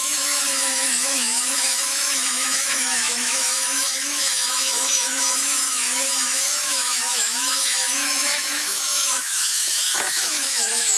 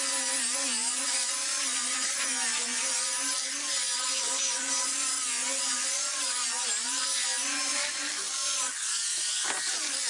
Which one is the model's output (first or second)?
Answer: first